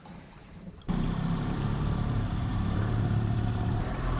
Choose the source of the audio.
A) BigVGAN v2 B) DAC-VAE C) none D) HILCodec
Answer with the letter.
A